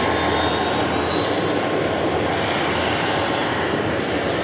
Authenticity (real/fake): real